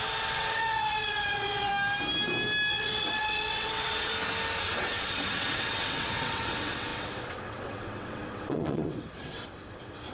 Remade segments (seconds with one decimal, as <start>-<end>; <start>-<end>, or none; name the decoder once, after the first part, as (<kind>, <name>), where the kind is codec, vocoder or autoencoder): 0.0-1.7 (vocoder, WaveNeXt); 2.7-4.1; 4.6-10.1

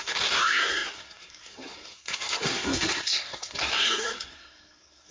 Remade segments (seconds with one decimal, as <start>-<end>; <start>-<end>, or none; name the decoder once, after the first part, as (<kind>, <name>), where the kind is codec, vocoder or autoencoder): 0.0-5.1 (codec, SNAC)

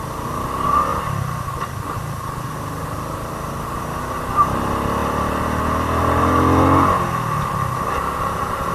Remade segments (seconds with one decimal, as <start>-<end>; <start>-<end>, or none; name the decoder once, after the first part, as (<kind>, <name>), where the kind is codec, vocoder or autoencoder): none

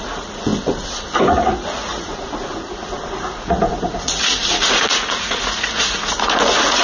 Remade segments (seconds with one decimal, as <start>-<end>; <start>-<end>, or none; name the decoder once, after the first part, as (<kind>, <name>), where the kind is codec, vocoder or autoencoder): 0.0-6.8 (vocoder, Vocos)

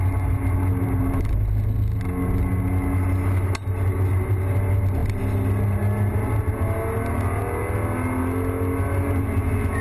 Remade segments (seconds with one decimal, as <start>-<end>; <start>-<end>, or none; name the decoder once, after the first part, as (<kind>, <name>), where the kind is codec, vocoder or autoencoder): none

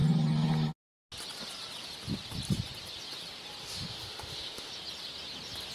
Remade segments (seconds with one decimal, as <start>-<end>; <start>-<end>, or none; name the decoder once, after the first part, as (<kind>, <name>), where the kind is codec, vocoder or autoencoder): 3.6-4.7 (autoencoder, DAC-VAE)

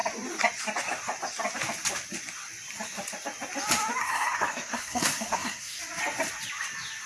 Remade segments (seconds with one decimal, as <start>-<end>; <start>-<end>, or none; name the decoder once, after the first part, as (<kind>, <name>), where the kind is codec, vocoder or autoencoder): 4.0-5.8 (codec, SNAC)

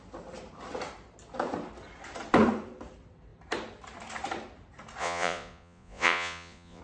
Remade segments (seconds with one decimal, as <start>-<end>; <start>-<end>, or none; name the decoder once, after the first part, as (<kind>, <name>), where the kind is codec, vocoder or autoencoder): 5.0-6.8 (vocoder, Vocos)